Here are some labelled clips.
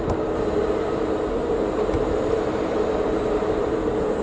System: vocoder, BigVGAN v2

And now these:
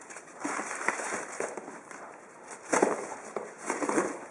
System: vocoder, BigVGAN v2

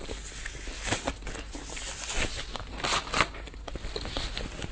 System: none